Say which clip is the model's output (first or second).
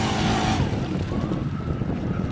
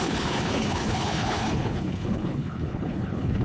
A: second